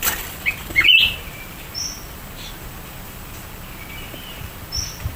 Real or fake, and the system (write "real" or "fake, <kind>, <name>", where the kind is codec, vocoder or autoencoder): fake, vocoder, BigVGAN v2